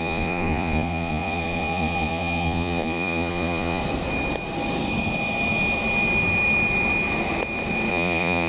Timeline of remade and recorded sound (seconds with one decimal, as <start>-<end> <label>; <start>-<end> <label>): 0.0-3.8 remade; 3.8-7.9 recorded; 7.9-8.5 remade